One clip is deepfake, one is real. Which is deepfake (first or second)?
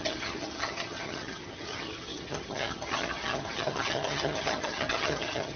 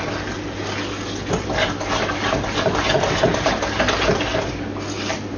first